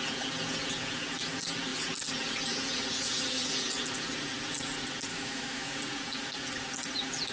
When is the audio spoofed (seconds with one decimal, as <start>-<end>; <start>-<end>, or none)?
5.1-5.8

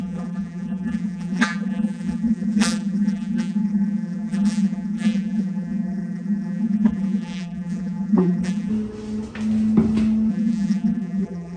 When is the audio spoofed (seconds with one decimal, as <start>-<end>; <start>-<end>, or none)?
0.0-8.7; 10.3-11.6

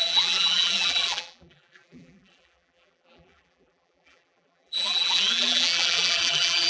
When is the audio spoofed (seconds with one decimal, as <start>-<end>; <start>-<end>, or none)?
0.0-6.7